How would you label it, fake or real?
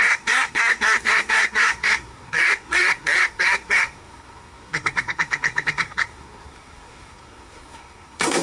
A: fake